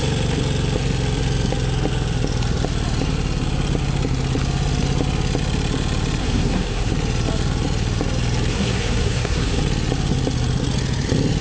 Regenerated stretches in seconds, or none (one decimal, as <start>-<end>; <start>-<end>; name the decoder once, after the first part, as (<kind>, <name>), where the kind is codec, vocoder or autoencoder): 6.2-6.9 (codec, SNAC); 8.5-9.6